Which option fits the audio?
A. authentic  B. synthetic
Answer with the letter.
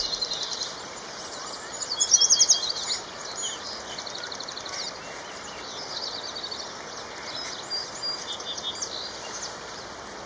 A